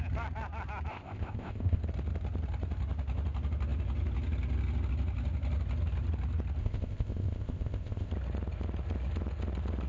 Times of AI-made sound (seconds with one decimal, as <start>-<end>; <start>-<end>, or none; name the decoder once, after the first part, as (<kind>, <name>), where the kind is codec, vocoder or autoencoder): 0.9-1.8 (codec, ZipCodec); 6.6-8.1

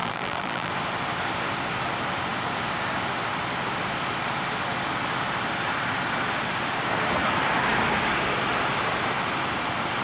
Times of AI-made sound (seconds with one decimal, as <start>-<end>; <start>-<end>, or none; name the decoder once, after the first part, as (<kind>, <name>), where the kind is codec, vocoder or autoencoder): 0.0-0.7 (vocoder, BigVGAN v2)

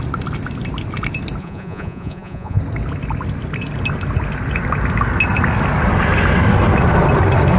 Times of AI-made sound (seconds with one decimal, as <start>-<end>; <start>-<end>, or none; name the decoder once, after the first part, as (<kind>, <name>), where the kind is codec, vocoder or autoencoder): 1.4-2.6 (vocoder, Vocos)